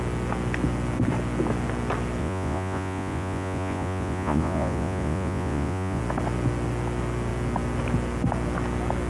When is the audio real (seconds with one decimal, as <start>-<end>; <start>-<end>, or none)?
0.0-2.2; 6.0-9.1